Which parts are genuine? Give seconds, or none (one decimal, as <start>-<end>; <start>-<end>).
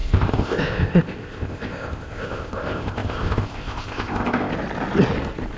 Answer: 4.5-5.6